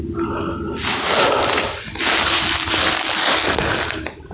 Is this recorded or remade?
recorded